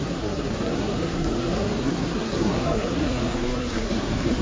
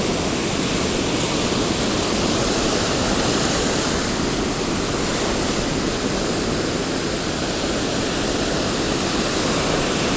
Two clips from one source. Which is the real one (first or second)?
second